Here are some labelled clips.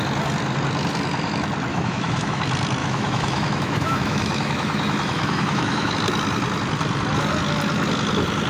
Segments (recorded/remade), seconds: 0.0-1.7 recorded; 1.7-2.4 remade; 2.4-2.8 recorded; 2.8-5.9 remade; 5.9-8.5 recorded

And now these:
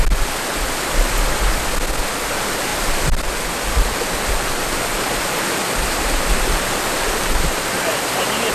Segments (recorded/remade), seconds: 0.0-2.7 recorded; 2.7-7.4 remade; 7.4-8.5 recorded

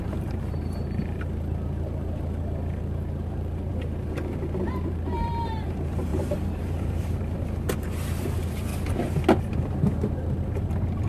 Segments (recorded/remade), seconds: 0.0-3.7 remade; 3.7-4.7 recorded; 4.7-8.7 remade; 8.7-9.4 recorded; 9.4-11.1 remade

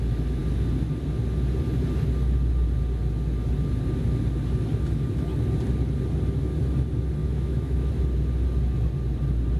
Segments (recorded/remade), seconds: 0.0-7.2 recorded; 7.2-7.9 remade; 7.9-9.6 recorded